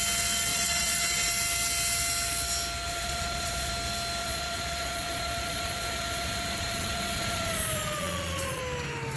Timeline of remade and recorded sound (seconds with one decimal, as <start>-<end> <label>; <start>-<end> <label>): 0.0-0.5 recorded; 0.5-1.3 remade; 1.3-2.9 recorded; 2.9-3.7 remade; 3.7-4.2 recorded; 4.2-8.6 remade; 8.6-9.2 recorded